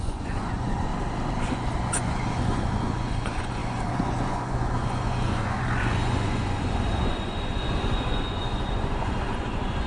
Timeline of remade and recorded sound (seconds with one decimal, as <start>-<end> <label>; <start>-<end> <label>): 0.0-0.9 remade; 0.9-1.5 recorded; 1.5-9.9 remade